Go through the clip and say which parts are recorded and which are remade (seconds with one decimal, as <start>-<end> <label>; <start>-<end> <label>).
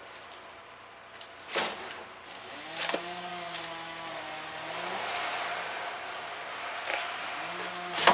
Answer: 0.0-8.1 recorded